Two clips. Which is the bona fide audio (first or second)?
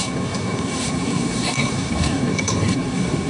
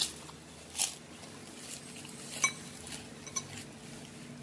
second